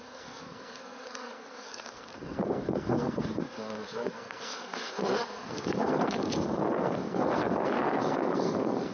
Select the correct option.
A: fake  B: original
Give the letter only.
A